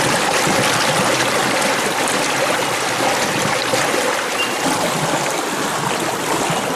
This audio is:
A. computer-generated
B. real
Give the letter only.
B